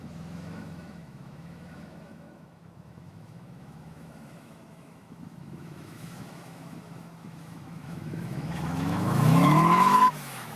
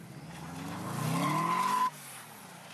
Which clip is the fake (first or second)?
first